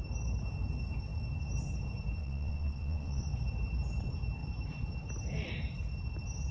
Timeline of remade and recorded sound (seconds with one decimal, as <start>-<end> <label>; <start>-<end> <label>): 0.0-2.2 recorded; 2.2-3.3 remade; 3.3-6.5 recorded